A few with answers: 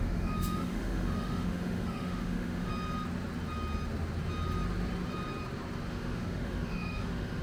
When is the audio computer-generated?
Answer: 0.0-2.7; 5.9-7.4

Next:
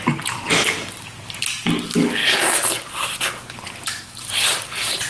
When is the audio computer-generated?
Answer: none

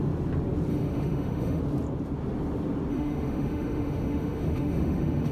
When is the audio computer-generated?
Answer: 0.7-1.6; 2.9-5.3

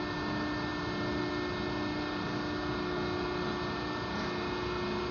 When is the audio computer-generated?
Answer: none